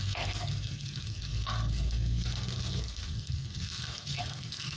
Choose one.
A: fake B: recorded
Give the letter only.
A